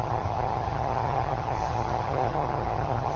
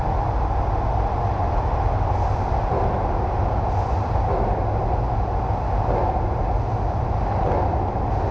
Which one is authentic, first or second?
second